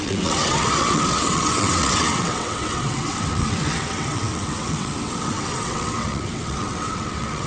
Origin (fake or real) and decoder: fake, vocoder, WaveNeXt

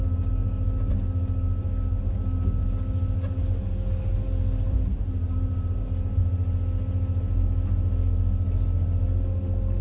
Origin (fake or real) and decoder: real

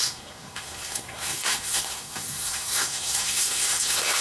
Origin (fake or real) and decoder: fake, codec, SNAC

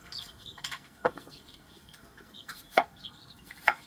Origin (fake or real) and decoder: fake, codec, SNAC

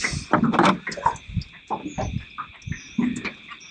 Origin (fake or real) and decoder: real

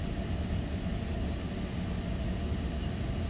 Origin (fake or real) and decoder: real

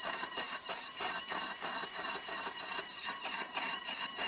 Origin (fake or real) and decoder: fake, vocoder, BigVGAN v2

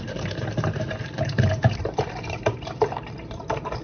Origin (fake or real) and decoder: fake, vocoder, BigVGAN v2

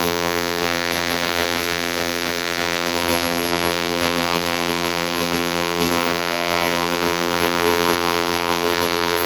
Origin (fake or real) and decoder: fake, vocoder, BigVGAN v2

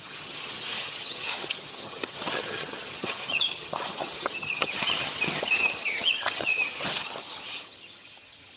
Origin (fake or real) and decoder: fake, vocoder, HiFi-GAN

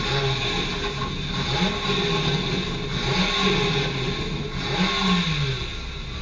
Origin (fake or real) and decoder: real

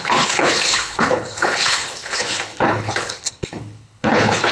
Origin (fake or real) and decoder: fake, codec, HILCodec